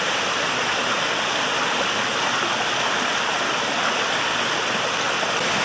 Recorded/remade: recorded